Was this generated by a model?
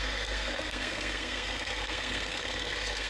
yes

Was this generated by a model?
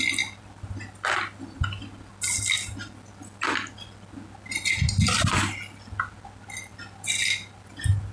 no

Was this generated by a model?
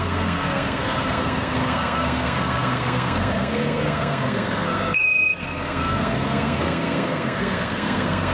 yes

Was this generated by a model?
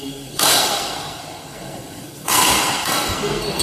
yes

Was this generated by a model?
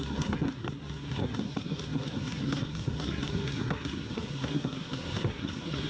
yes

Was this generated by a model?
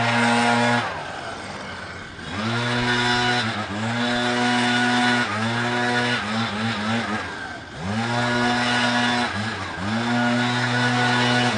no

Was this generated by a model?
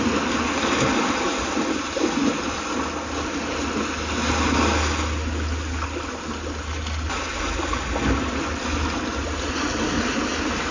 no